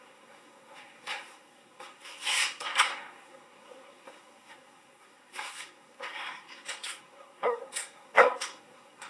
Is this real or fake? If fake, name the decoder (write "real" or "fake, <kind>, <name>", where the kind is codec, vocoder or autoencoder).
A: fake, codec, SNAC